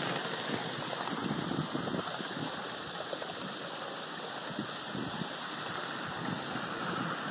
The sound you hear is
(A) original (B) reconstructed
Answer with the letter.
A